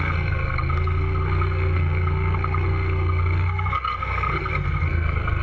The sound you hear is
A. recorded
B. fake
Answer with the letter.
B